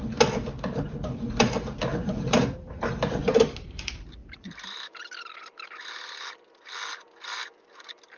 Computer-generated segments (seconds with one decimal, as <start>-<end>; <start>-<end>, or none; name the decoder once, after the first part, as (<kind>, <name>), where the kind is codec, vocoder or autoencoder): 2.0-3.2 (vocoder, BigVGAN v2); 4.2-5.0